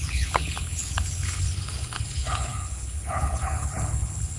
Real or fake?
fake